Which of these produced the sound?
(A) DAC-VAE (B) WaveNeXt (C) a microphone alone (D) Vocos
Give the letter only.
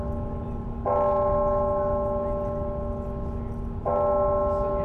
C